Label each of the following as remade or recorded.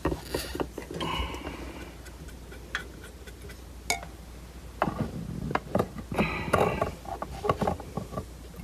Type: recorded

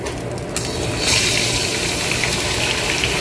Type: recorded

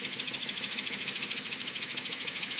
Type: remade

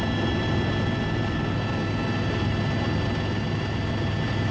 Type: recorded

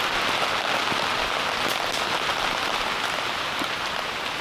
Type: recorded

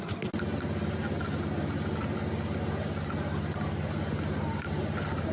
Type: recorded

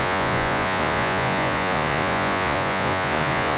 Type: remade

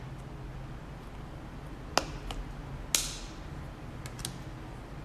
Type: recorded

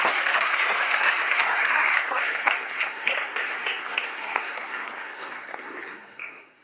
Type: remade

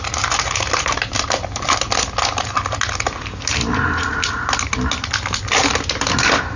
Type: recorded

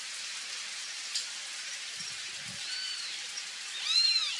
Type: remade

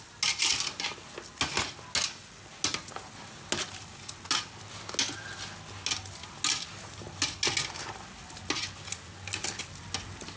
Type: recorded